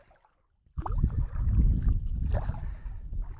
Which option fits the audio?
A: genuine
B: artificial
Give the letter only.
A